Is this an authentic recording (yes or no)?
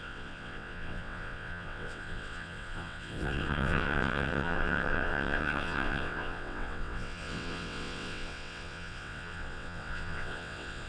no